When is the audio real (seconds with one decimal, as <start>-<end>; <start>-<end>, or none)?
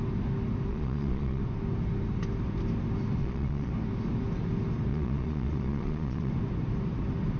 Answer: 0.0-0.7; 1.4-3.2; 3.7-4.9; 6.3-7.4